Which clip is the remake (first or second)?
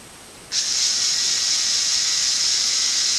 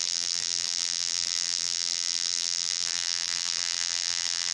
second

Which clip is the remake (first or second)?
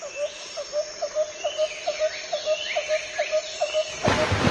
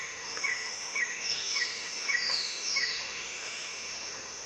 second